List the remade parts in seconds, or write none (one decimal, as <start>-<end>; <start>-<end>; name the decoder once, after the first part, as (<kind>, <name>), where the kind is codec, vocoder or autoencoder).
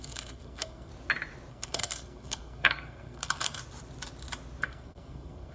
0.0-0.9 (codec, SNAC); 1.5-3.6; 4.6-5.5